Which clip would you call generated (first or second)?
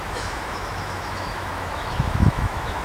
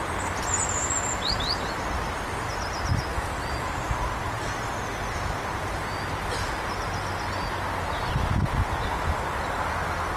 first